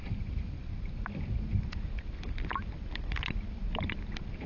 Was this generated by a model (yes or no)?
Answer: no